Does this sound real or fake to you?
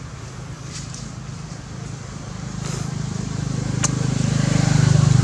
real